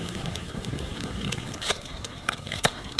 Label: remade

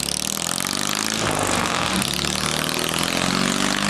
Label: recorded